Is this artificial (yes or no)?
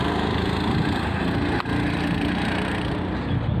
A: no